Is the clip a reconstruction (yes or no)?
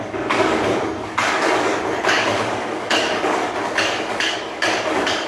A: yes